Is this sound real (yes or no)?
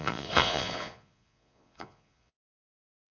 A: no